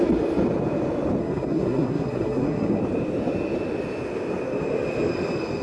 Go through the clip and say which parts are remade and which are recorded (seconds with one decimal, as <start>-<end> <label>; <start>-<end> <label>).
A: 0.0-1.2 recorded; 1.2-2.8 remade; 2.8-5.6 recorded